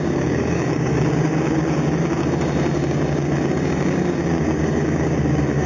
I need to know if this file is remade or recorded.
remade